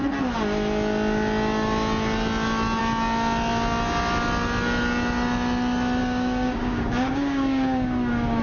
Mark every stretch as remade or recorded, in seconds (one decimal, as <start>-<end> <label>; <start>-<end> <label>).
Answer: 0.0-6.0 recorded; 6.0-8.4 remade